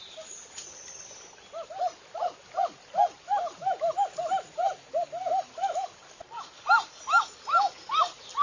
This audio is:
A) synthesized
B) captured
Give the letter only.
B